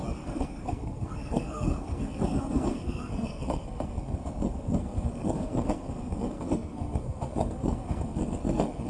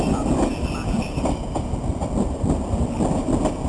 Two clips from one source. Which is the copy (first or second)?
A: first